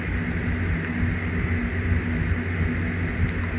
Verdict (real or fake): real